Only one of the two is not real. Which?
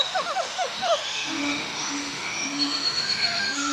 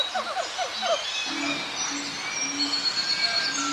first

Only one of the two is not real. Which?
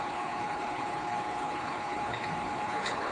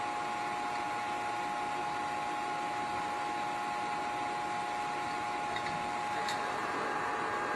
first